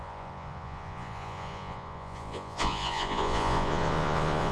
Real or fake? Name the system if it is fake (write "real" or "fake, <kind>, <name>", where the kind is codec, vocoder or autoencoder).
fake, vocoder, Vocos